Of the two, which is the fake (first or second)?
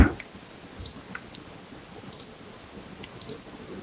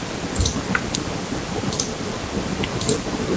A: second